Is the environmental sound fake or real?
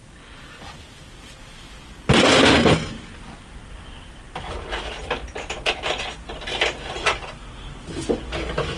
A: real